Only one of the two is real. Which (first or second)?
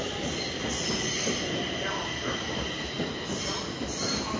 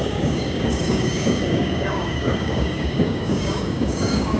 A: first